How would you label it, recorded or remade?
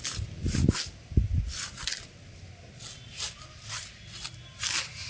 recorded